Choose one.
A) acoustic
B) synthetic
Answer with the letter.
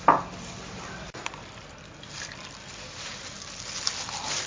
B